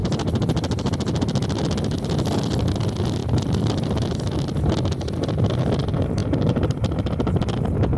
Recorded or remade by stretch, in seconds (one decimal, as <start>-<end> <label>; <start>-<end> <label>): 0.0-1.2 remade; 1.2-3.2 recorded; 3.2-4.1 remade; 4.1-6.2 recorded; 6.2-7.1 remade; 7.1-8.0 recorded

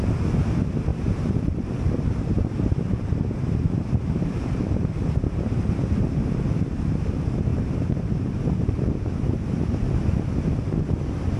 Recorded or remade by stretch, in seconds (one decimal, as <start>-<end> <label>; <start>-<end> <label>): 0.0-0.9 recorded; 0.9-4.6 remade; 4.6-7.5 recorded; 7.5-9.1 remade; 9.1-11.4 recorded